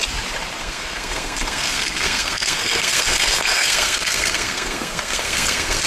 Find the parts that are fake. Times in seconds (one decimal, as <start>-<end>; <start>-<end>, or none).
0.6-5.9